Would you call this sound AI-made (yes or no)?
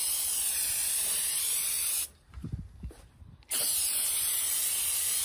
yes